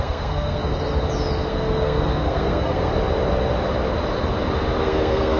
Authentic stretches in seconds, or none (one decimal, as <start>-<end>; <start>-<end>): 0.6-1.5; 2.9-4.8